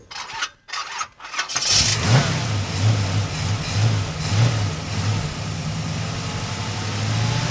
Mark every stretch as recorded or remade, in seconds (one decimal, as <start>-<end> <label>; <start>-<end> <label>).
0.0-7.5 recorded